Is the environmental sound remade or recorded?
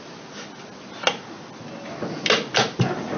recorded